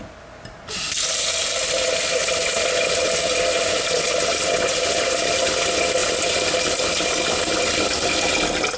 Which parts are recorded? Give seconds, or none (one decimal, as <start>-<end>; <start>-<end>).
0.0-8.8